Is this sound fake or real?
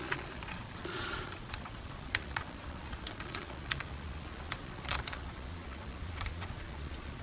fake